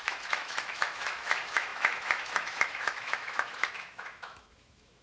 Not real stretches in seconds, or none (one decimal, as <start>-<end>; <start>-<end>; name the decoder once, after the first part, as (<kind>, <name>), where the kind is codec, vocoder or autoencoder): 0.0-5.0 (autoencoder, DAC-VAE)